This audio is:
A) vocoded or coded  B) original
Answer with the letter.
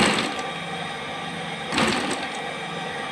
B